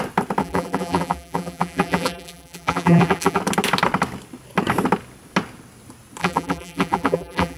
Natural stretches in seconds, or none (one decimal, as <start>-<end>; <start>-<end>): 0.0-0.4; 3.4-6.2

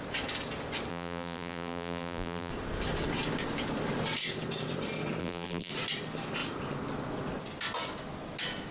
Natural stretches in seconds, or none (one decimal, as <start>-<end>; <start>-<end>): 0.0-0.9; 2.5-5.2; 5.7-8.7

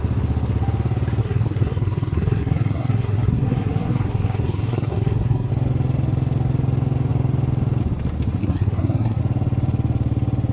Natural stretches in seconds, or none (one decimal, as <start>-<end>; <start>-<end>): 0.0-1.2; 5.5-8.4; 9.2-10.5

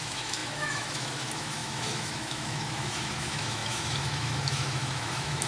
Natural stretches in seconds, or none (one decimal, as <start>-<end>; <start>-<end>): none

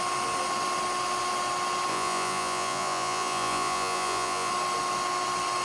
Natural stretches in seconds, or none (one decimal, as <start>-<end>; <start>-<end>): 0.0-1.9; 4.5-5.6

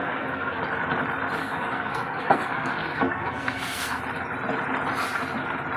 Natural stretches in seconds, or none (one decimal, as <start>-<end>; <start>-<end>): 0.6-1.4; 4.0-5.8